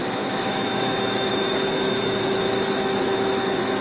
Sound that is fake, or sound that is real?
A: fake